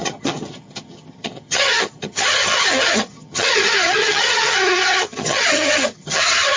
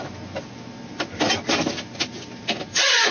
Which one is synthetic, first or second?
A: first